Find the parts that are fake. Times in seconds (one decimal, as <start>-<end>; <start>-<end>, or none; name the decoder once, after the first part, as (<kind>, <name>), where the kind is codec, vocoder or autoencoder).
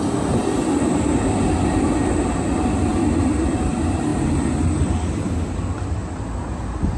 none